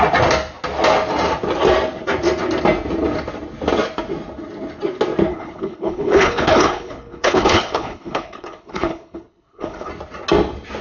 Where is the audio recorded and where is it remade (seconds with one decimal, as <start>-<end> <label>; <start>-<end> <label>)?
0.0-5.3 recorded; 5.3-9.9 remade; 9.9-10.8 recorded